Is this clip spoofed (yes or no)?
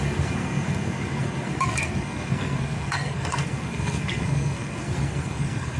yes